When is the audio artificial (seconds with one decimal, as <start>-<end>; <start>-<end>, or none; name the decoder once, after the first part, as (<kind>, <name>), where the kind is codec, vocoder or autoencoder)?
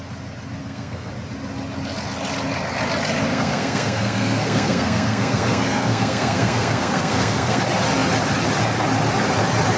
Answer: 0.6-1.1 (codec, SNAC); 3.3-7.6